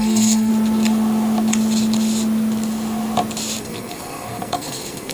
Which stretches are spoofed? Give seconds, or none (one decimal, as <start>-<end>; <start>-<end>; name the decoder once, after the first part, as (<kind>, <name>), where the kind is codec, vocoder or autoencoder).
0.0-0.5 (codec, SNAC); 3.6-5.1